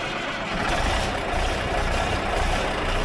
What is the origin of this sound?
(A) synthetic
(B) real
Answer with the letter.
B